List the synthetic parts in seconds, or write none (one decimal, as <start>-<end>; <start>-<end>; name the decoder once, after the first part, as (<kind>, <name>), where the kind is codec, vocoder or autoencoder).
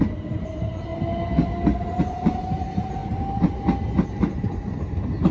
0.0-0.9 (vocoder, BigVGAN v2); 2.0-3.0; 4.4-5.3